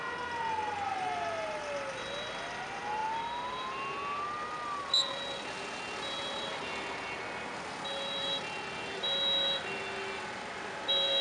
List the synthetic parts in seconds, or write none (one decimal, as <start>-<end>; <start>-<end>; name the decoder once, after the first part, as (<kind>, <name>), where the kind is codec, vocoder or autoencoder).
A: none